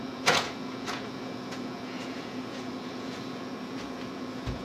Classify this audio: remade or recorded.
remade